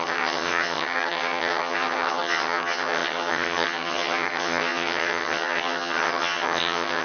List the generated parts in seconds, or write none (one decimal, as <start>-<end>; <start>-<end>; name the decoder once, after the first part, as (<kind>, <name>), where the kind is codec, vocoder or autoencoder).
0.0-7.0 (vocoder, HiFi-GAN)